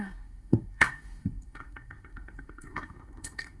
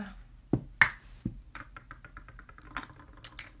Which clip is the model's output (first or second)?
first